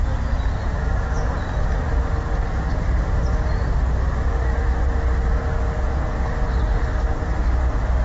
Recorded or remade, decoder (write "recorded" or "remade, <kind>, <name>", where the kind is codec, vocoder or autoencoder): recorded